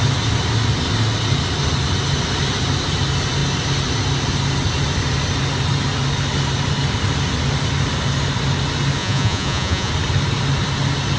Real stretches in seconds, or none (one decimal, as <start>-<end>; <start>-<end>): 0.0-9.0; 9.9-11.2